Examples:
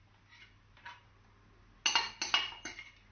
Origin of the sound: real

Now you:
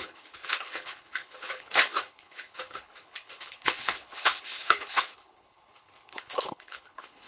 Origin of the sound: fake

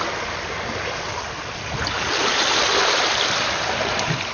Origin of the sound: real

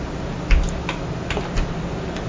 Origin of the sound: real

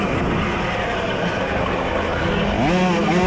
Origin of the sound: real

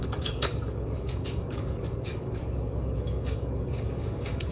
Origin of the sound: fake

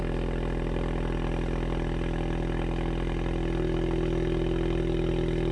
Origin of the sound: real